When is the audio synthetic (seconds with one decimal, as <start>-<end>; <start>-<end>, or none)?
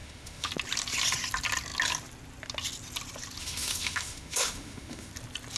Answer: 0.0-0.5; 3.4-5.1